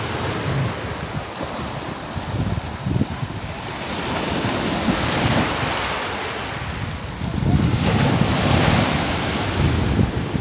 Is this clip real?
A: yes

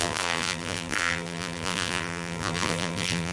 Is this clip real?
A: no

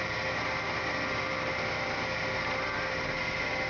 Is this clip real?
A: no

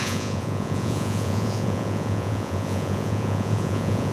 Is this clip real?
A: no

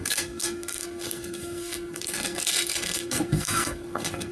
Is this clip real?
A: no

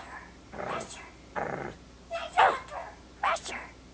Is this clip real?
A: yes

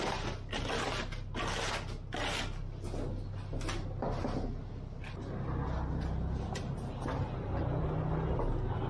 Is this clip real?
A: yes